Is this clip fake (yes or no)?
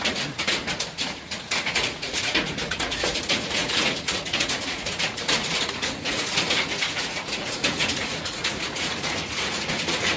yes